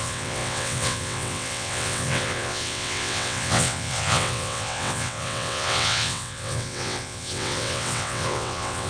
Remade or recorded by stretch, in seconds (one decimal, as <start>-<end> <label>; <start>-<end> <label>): 0.0-8.9 remade